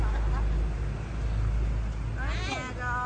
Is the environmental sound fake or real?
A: real